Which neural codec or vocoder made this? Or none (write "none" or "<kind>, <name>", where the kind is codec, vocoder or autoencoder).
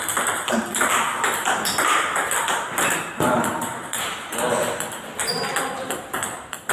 none